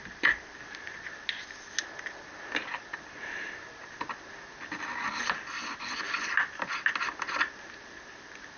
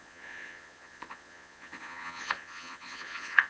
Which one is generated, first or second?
second